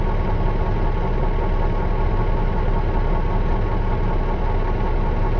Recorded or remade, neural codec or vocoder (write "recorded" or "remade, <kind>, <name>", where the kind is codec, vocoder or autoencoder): recorded